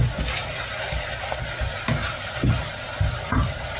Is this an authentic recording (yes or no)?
yes